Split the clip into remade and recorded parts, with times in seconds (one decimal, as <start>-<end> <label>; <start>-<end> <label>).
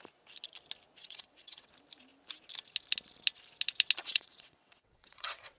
0.0-1.0 recorded; 1.0-1.7 remade; 1.7-4.0 recorded; 4.0-5.6 remade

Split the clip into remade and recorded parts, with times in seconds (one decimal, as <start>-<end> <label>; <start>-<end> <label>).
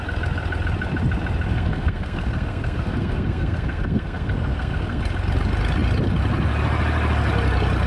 0.0-1.5 recorded; 1.5-5.0 remade; 5.0-7.9 recorded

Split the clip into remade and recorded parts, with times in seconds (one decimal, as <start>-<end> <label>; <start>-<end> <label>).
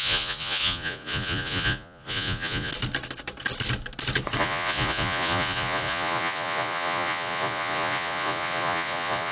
0.0-2.7 remade; 2.7-4.4 recorded; 4.4-9.3 remade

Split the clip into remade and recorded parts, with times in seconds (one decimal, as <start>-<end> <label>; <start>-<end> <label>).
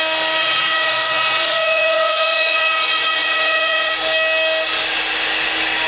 0.0-0.4 recorded; 0.4-3.9 remade; 3.9-5.9 recorded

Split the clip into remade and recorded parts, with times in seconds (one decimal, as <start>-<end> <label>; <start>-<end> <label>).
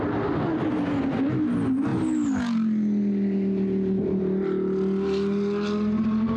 0.0-6.4 recorded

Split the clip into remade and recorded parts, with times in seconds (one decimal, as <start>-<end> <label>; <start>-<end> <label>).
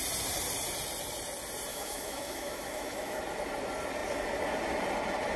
0.0-1.7 recorded; 1.7-3.2 remade; 3.2-5.4 recorded